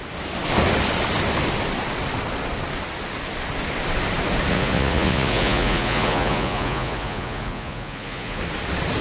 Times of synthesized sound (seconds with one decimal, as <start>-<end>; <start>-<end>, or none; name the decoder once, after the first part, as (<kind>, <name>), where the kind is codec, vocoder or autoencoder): 4.5-8.4 (vocoder, Vocos)